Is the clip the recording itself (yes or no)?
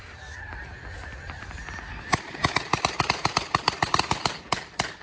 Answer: yes